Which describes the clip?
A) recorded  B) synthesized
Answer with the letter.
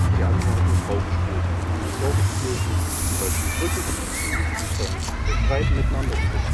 A